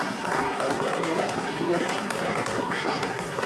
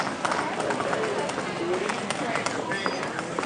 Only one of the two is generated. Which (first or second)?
first